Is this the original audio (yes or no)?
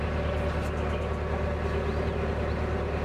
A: yes